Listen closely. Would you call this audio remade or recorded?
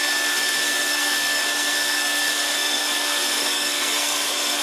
remade